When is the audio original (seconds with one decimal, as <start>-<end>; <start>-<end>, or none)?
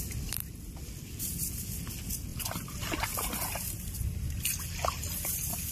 0.0-0.4; 1.2-2.3